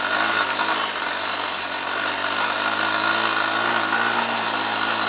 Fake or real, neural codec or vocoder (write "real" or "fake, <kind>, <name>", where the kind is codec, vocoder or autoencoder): real